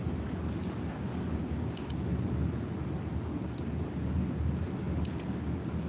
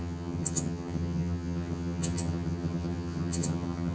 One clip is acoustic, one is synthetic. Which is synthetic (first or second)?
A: second